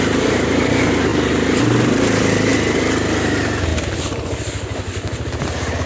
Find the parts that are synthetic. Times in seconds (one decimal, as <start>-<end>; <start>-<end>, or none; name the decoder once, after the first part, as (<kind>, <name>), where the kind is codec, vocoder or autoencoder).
none